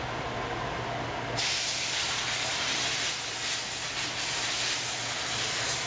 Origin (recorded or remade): recorded